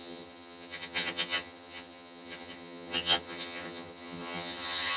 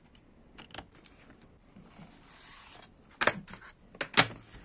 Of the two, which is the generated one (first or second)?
first